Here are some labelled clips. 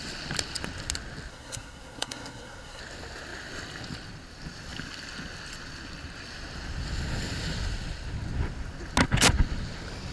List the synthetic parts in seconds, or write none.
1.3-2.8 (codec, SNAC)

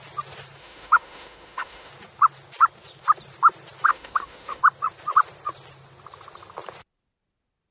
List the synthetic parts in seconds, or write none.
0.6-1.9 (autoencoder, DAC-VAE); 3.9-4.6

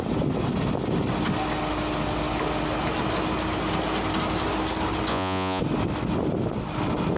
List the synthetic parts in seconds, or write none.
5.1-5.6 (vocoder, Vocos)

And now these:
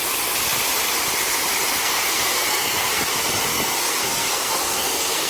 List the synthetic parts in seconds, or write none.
1.8-3.1 (codec, SNAC); 3.5-5.3